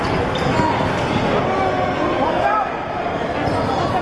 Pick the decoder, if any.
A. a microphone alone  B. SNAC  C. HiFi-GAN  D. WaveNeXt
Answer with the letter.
A